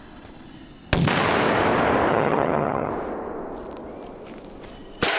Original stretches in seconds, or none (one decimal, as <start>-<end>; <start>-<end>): 0.0-2.1; 2.9-5.2